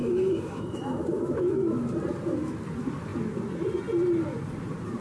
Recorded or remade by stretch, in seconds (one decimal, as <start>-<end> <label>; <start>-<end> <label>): 0.0-1.8 remade; 1.8-5.0 recorded